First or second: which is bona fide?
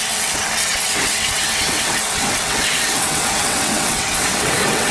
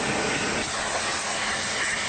second